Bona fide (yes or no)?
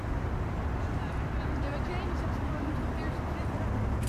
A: yes